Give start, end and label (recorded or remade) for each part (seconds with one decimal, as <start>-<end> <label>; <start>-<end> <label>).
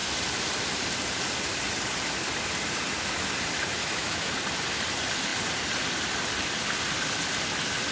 0.0-3.8 recorded; 3.8-4.3 remade; 4.3-7.9 recorded